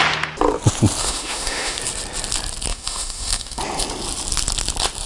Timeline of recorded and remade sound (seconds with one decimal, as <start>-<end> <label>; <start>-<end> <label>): 0.0-1.0 recorded; 1.0-1.8 remade; 1.8-2.7 recorded; 2.7-3.6 remade; 3.6-5.1 recorded